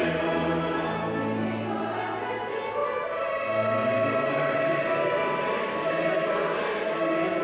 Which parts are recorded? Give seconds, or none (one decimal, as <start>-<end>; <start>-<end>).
0.0-7.4